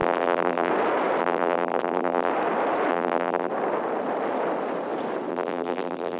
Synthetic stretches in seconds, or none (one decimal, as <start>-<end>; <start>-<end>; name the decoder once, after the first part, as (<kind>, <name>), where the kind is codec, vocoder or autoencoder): 0.0-0.7 (vocoder, BigVGAN v2); 1.2-2.3; 2.9-3.5; 5.3-6.2